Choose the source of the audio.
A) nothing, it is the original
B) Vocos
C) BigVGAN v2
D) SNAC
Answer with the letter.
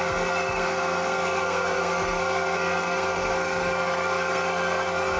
D